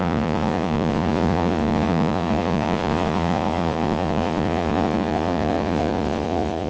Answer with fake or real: fake